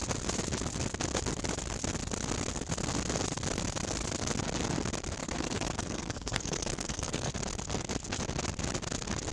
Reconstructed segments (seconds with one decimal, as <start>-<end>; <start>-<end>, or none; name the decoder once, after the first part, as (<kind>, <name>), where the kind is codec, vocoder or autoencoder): 5.2-7.3 (codec, SNAC)